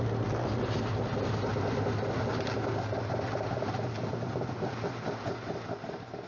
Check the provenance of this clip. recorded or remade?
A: recorded